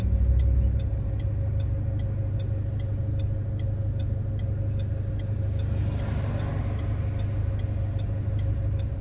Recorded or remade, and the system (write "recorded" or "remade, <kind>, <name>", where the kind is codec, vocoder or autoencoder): recorded